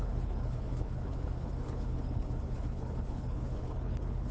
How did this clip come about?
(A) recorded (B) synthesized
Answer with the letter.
B